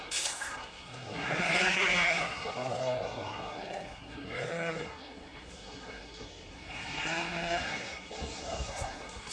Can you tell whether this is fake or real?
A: fake